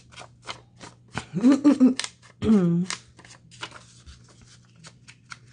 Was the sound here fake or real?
real